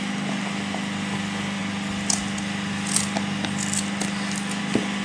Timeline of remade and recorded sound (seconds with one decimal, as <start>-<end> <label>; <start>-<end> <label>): 0.0-5.0 recorded